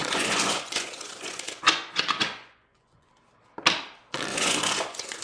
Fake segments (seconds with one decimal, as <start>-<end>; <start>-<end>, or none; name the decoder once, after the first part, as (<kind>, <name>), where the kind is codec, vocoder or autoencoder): 0.0-3.1 (vocoder, Vocos); 4.3-5.2